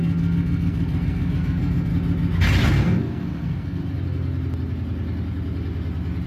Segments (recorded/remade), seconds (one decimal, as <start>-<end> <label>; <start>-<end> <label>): 0.0-1.9 remade; 1.9-2.7 recorded; 2.7-3.8 remade; 3.8-6.3 recorded